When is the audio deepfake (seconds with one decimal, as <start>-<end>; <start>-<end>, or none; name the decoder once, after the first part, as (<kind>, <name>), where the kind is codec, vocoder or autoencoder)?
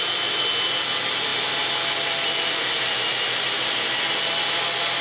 none